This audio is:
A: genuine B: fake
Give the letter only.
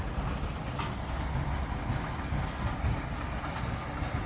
A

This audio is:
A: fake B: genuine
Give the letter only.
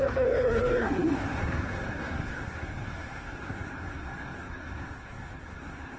A